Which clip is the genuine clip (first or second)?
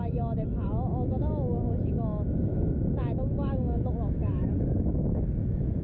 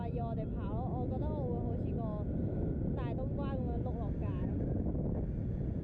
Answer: second